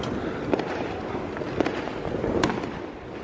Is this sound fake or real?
real